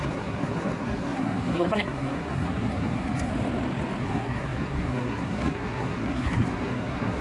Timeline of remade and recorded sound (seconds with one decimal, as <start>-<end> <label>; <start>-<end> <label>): 0.0-3.3 remade; 3.3-4.0 recorded; 4.0-7.2 remade